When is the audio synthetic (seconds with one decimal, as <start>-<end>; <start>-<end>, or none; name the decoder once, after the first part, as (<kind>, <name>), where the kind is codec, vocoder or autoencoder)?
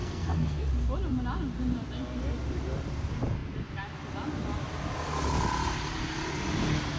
0.0-0.7 (codec, SNAC)